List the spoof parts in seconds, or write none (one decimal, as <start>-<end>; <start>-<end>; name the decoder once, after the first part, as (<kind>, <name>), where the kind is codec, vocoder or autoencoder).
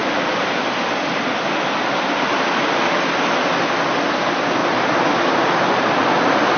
4.6-5.9 (vocoder, BigVGAN v2)